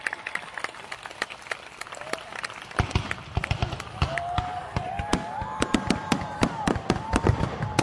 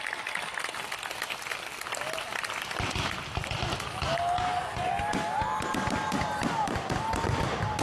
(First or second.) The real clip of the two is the second